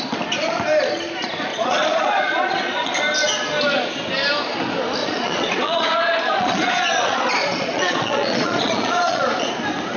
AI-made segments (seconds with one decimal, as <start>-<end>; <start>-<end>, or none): 1.5-3.0; 5.0-9.5